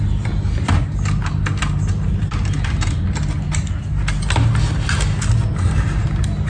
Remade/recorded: recorded